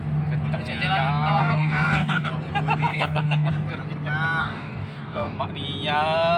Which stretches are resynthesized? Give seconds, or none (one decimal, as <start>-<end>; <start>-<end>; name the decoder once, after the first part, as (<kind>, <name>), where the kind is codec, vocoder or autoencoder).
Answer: 1.4-2.3 (codec, DAC); 2.9-3.5; 4.4-5.4